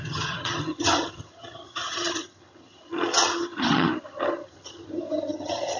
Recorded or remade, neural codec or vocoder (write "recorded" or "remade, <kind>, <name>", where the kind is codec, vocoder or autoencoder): remade, vocoder, HiFi-GAN